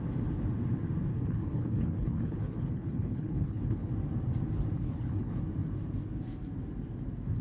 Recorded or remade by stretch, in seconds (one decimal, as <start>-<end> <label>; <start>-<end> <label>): 0.0-1.1 recorded; 1.1-3.9 remade; 3.9-4.8 recorded; 4.8-5.4 remade; 5.4-7.4 recorded